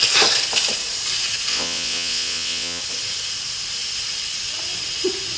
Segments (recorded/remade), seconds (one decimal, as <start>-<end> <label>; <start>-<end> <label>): 0.0-1.5 recorded; 1.5-2.8 remade; 2.8-5.4 recorded